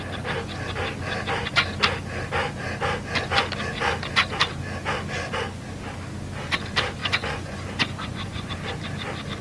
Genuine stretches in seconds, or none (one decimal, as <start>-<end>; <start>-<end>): 0.0-7.0; 8.5-9.4